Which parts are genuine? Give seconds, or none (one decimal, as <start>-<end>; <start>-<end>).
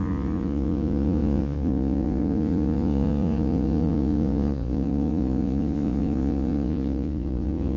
none